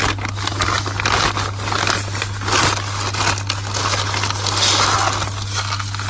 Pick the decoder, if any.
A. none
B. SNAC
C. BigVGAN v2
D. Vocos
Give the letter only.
A